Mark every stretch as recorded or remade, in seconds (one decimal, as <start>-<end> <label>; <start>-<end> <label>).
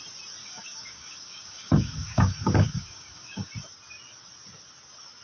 0.0-0.4 recorded; 0.4-3.5 remade; 3.5-5.2 recorded